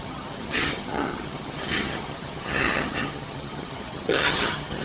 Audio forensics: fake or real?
fake